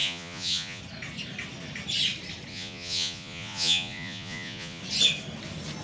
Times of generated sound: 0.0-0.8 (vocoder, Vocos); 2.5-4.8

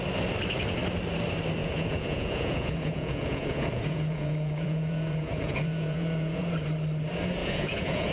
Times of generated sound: 1.6-6.5 (vocoder, Vocos); 7.4-8.1

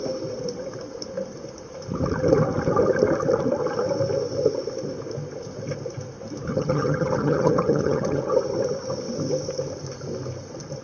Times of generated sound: 6.5-8.2 (vocoder, HiFi-GAN)